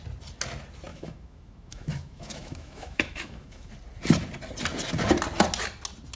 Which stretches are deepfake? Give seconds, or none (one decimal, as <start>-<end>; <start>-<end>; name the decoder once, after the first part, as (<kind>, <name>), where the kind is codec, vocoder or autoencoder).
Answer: 0.9-3.7 (autoencoder, DAC-VAE)